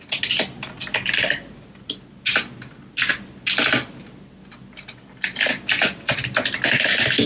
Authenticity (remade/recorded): recorded